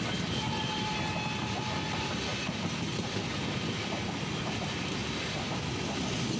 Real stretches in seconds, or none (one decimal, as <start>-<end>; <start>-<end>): 0.0-2.3; 4.4-5.0; 5.7-6.4